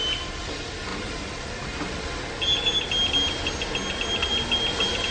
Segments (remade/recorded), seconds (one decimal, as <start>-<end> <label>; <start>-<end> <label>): 0.0-5.1 recorded